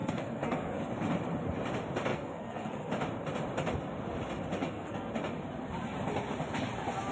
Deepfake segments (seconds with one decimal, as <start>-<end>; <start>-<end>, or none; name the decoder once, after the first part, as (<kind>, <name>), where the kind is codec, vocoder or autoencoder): 0.0-0.8 (codec, SNAC); 2.1-2.9; 4.6-5.1